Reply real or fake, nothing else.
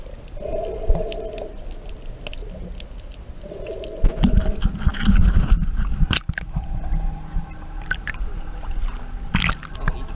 real